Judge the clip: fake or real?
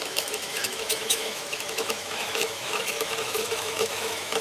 fake